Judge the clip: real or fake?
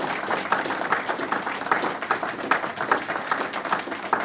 real